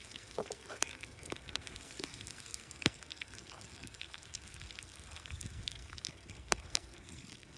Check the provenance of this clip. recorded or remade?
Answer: remade